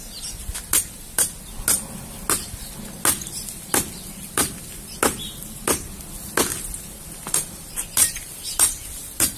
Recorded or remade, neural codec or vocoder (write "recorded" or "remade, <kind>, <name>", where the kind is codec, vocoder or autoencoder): recorded